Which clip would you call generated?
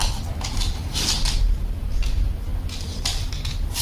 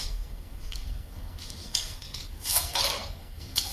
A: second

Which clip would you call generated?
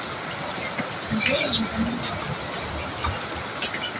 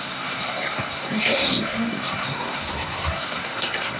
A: second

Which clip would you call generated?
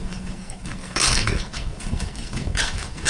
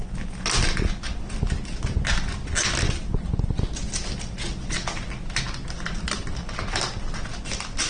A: first